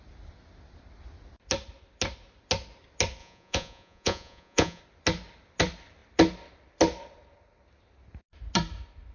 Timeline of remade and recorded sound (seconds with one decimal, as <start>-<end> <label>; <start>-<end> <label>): 0.0-3.2 recorded; 3.2-4.8 remade; 4.8-9.1 recorded